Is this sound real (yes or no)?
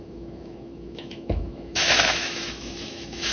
no